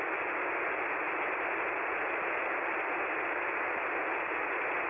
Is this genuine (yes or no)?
yes